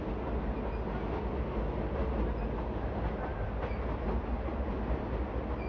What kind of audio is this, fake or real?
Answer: real